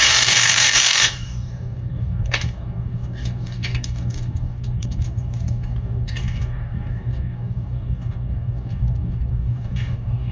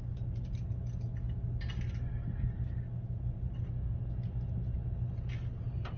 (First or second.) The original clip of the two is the second